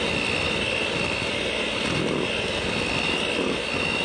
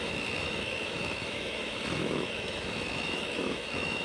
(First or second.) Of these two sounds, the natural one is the first